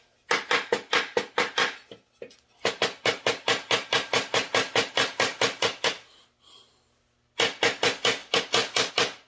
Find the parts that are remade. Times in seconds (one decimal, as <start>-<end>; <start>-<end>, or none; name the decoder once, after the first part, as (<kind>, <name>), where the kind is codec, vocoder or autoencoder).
none